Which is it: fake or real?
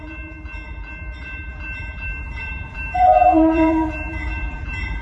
fake